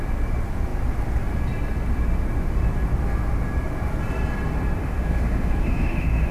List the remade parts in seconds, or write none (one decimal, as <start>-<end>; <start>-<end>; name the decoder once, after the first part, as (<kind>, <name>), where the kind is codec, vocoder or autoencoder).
4.8-6.3 (autoencoder, DAC-VAE)